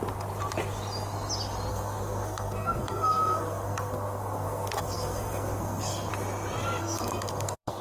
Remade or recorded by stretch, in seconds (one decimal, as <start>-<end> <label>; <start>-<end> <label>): 0.0-1.7 recorded; 1.7-6.1 remade; 6.1-6.8 recorded; 6.8-7.8 remade